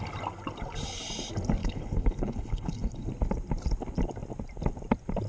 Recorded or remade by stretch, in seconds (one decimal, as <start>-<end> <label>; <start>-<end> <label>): 0.0-1.6 recorded; 1.6-3.1 remade; 3.1-5.3 recorded

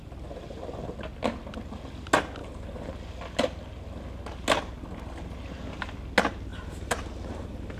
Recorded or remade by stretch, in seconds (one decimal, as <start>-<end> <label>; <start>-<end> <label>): 0.0-2.4 recorded; 2.4-2.9 remade; 2.9-6.5 recorded; 6.5-7.8 remade

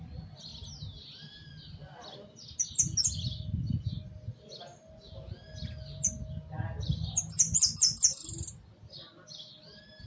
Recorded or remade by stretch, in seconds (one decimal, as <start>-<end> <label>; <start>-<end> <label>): 0.0-10.1 recorded

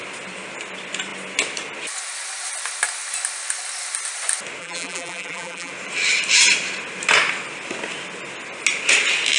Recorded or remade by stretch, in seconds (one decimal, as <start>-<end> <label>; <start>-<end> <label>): 0.0-4.6 recorded; 4.6-5.7 remade; 5.7-9.4 recorded

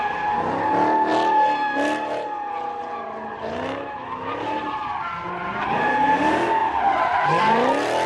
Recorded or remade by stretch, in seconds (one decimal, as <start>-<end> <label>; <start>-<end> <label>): 0.0-8.1 recorded

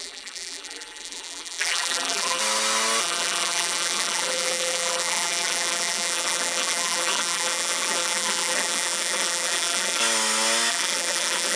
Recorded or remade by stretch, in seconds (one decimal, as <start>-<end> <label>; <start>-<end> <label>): 0.0-2.4 remade; 2.4-3.0 recorded; 3.0-10.0 remade; 10.0-10.7 recorded; 10.7-11.6 remade

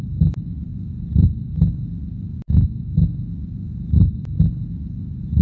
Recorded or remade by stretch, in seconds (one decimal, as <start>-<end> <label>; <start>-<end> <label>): 0.0-0.7 remade; 0.7-3.7 recorded; 3.7-4.2 remade; 4.2-5.0 recorded; 5.0-5.4 remade